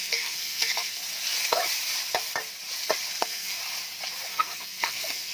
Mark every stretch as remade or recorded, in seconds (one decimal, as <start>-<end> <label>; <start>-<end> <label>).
0.0-1.0 remade; 1.0-3.2 recorded; 3.2-3.6 remade; 3.6-4.3 recorded; 4.3-5.3 remade